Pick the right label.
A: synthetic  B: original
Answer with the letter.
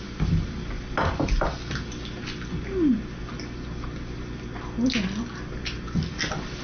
B